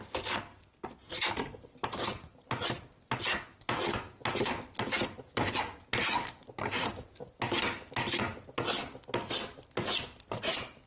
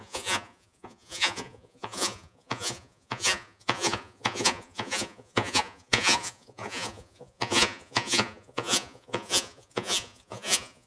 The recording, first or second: first